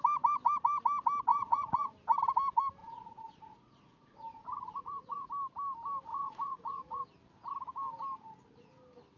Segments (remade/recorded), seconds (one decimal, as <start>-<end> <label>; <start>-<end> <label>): 0.0-1.3 recorded; 1.3-1.9 remade; 1.9-2.8 recorded; 2.8-5.3 remade; 5.3-6.1 recorded; 6.1-7.0 remade; 7.0-9.2 recorded